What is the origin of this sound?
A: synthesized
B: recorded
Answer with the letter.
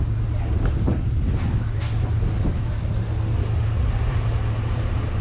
B